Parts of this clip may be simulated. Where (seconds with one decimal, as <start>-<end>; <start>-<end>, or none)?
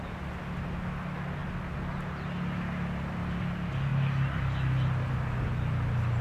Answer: none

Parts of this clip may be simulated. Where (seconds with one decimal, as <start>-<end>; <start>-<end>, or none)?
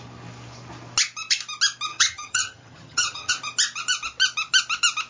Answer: 1.9-3.3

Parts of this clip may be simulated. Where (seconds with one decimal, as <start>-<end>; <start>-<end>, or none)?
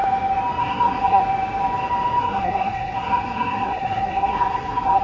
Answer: 0.6-1.2; 2.2-5.0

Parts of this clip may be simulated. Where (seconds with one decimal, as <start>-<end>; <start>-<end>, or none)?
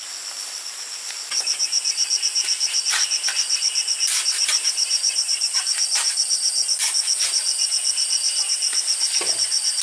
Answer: 4.5-5.7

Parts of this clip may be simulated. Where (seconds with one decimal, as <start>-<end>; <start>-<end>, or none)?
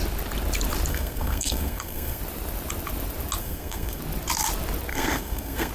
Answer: 0.9-2.2; 3.4-4.0; 4.9-5.7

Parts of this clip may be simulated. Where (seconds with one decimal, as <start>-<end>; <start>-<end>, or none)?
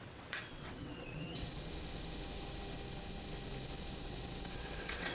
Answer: 0.0-1.5; 4.0-5.1